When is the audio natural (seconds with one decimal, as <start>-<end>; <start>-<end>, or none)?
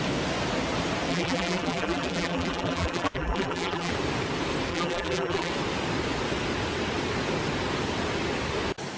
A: 0.0-1.1; 3.9-4.7; 5.5-9.0